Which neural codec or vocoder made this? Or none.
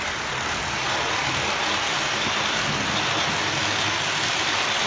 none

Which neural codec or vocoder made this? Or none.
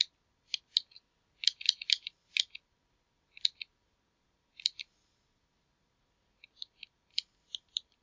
none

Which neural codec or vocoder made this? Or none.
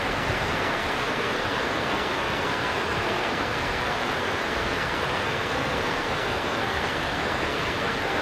codec, SNAC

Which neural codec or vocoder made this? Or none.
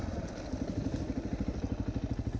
none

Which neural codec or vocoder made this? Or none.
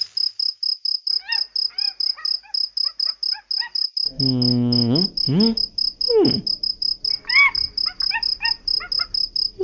none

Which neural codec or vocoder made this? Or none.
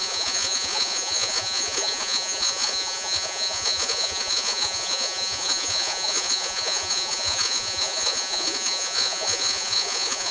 vocoder, Vocos